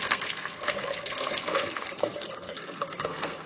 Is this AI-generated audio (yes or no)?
yes